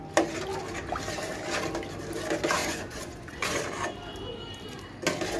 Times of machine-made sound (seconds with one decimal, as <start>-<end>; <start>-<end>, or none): 2.6-3.6